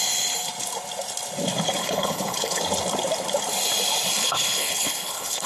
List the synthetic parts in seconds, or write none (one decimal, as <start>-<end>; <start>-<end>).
1.8-2.6; 4.1-5.5